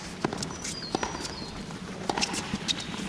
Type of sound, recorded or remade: recorded